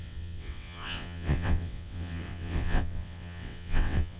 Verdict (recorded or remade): remade